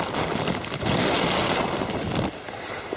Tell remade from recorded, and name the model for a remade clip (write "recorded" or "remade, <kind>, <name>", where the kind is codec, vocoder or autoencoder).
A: recorded